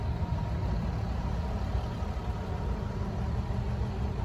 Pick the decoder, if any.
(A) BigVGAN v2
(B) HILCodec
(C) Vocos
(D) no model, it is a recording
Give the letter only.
D